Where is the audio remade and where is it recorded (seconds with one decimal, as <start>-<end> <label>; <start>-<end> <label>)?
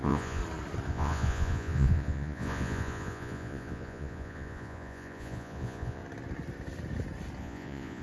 0.0-0.4 remade; 0.4-0.9 recorded; 0.9-6.0 remade; 6.0-7.4 recorded; 7.4-8.0 remade